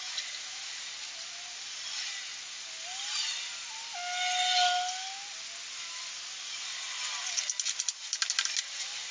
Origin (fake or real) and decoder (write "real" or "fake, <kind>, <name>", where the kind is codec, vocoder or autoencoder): real